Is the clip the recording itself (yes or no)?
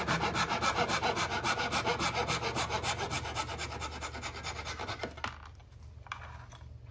yes